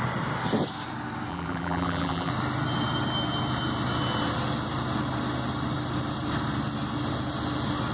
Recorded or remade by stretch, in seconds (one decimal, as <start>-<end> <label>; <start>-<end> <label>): 0.0-1.3 recorded; 1.3-2.3 remade; 2.3-7.9 recorded